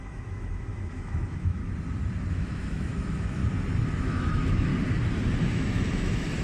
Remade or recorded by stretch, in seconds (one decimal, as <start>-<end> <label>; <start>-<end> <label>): 0.0-1.6 remade; 1.6-2.3 recorded; 2.3-3.4 remade; 3.4-4.0 recorded; 4.0-4.7 remade; 4.7-5.4 recorded; 5.4-6.4 remade